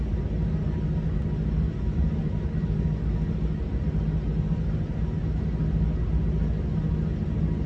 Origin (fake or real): real